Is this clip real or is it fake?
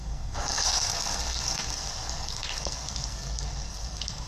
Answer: fake